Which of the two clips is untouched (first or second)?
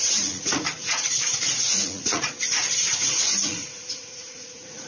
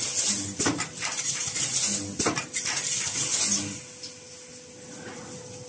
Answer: second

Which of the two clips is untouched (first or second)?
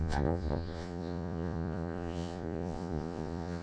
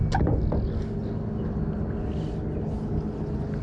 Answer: second